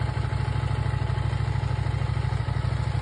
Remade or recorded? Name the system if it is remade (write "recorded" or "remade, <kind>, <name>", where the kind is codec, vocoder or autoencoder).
recorded